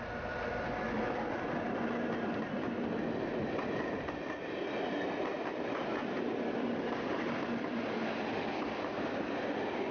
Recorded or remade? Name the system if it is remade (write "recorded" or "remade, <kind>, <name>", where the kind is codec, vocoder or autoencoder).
recorded